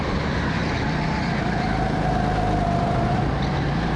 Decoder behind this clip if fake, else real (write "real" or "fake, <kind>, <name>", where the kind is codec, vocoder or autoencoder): real